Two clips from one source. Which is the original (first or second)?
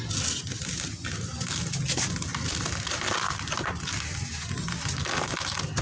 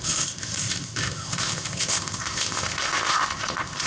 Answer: first